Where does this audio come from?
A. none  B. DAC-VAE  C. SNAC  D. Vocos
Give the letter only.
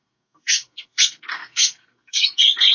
C